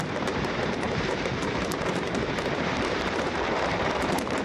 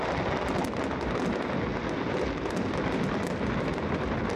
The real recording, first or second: second